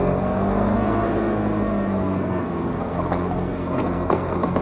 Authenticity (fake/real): fake